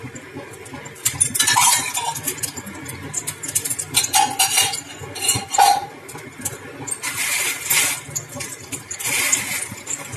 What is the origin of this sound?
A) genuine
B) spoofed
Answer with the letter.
B